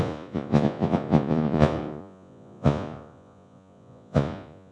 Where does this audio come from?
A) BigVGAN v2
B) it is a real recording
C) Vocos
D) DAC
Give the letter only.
C